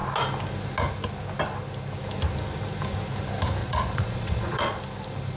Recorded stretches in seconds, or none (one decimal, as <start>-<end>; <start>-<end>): 0.0-3.6; 4.8-5.4